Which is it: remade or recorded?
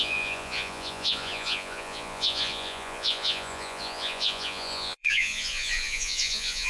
remade